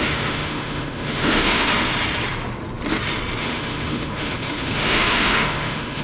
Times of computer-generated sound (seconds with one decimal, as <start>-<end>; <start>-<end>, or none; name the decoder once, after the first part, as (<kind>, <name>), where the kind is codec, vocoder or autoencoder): 0.0-1.7 (autoencoder, DAC-VAE); 3.4-6.0